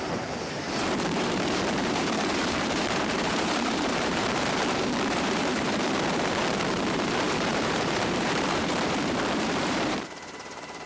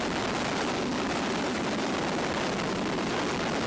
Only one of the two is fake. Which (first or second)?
first